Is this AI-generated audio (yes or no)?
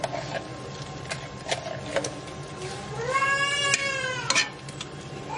no